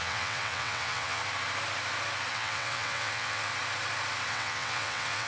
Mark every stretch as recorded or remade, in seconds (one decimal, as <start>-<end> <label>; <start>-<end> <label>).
0.0-1.2 remade; 1.2-2.3 recorded; 2.3-3.5 remade; 3.5-4.3 recorded; 4.3-5.3 remade